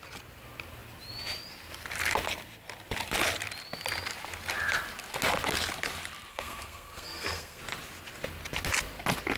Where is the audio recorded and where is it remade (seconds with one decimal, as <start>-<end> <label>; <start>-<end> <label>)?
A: 0.0-6.3 recorded; 6.3-7.6 remade; 7.6-9.4 recorded